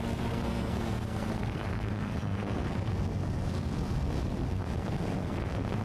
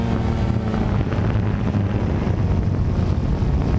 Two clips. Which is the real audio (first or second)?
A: second